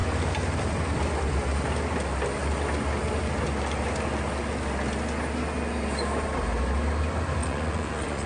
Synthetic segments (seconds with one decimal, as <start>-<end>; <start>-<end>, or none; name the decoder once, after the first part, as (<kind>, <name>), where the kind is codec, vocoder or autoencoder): 7.4-8.3 (vocoder, Vocos)